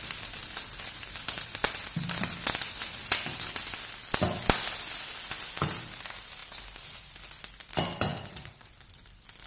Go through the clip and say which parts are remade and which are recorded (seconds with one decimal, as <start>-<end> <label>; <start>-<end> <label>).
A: 0.0-8.1 recorded; 8.1-8.7 remade; 8.7-9.5 recorded